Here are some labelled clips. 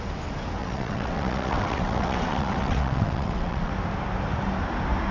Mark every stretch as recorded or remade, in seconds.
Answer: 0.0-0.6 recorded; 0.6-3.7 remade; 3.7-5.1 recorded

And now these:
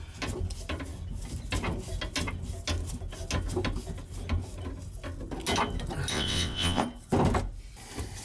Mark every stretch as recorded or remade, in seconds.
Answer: 0.0-6.1 recorded; 6.1-6.8 remade; 6.8-8.2 recorded

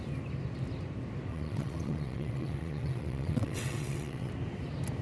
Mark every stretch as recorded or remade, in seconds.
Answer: 0.0-1.3 recorded; 1.3-4.3 remade; 4.3-5.0 recorded

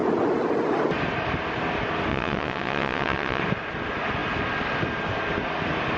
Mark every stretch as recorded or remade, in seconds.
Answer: 0.0-2.1 recorded; 2.1-3.4 remade; 3.4-6.0 recorded